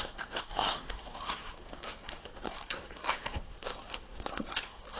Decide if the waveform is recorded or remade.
remade